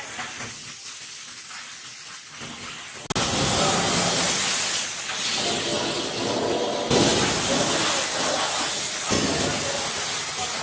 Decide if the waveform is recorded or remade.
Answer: recorded